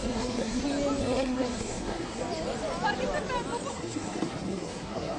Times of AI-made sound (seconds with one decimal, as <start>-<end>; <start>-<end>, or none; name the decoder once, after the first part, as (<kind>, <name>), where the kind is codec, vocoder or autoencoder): 0.0-0.6 (codec, SNAC); 1.0-2.2; 3.7-5.2